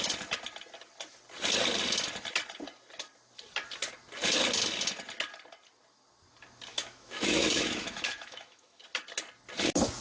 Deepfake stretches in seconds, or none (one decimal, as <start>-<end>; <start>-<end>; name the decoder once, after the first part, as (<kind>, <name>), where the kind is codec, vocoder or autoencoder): 6.7-8.8 (autoencoder, DAC-VAE)